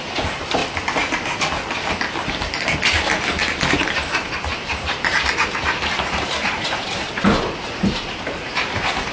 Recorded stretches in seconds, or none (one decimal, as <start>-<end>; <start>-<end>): 0.6-3.7